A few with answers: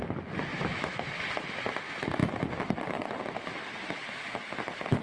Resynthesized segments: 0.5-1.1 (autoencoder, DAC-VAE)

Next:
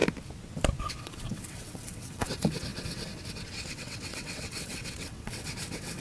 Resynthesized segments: 1.0-6.0 (vocoder, WaveNeXt)

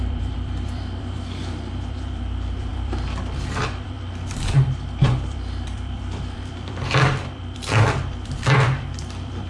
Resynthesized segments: 0.0-9.5 (vocoder, BigVGAN v2)

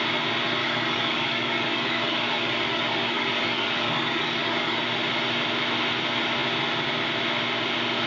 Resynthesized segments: 0.6-4.8 (codec, DAC)

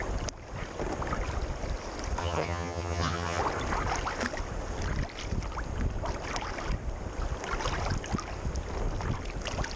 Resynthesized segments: 2.2-3.4 (vocoder, HiFi-GAN)

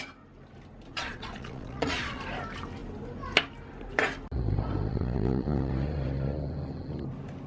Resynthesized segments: 0.9-2.2 (vocoder, Vocos); 4.9-5.7

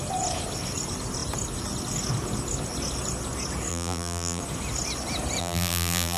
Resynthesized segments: 3.7-4.4 (vocoder, BigVGAN v2); 5.4-6.2

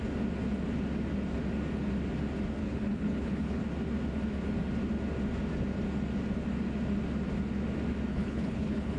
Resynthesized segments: 2.6-3.6 (codec, HILCodec); 8.1-9.0